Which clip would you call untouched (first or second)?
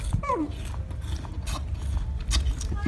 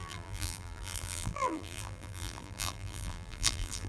first